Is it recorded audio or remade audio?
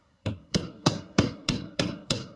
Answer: remade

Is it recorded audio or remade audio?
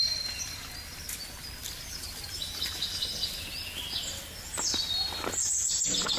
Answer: recorded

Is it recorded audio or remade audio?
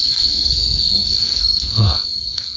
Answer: remade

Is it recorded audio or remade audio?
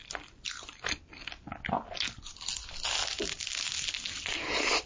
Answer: recorded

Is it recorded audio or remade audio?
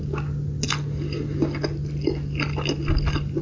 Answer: recorded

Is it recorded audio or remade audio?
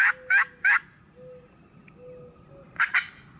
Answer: recorded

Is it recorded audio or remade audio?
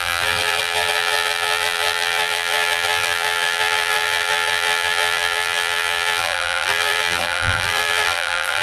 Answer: remade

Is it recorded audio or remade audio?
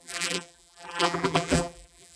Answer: remade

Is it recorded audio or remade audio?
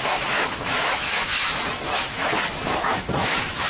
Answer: remade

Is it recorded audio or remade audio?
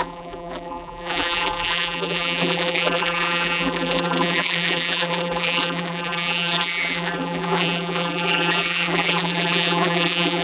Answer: remade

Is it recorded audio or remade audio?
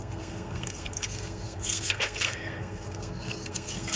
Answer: remade